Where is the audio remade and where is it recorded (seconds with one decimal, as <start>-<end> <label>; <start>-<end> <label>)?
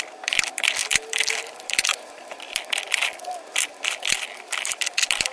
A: 0.0-5.3 recorded